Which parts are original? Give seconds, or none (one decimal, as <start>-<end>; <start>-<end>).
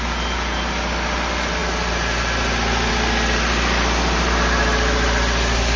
0.0-5.8